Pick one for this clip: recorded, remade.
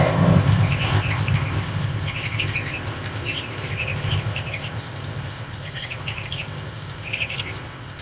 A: remade